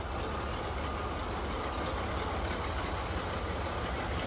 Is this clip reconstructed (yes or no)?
no